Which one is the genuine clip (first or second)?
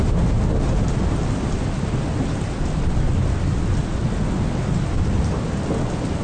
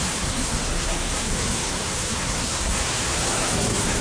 first